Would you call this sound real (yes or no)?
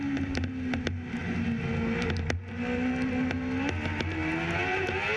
yes